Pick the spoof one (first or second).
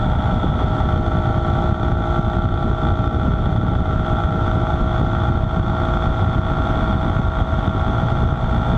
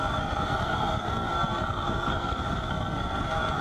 second